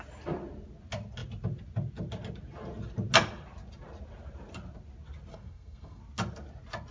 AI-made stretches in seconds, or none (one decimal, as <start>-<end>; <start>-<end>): 5.3-6.0